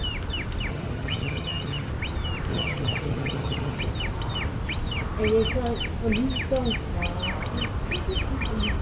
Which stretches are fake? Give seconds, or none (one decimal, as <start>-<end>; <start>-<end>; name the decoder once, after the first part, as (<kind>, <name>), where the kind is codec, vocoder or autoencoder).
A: 0.7-1.9 (vocoder, HiFi-GAN); 2.5-3.8